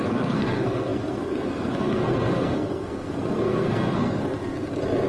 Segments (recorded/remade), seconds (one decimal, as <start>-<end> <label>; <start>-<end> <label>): 0.0-4.2 remade; 4.2-5.1 recorded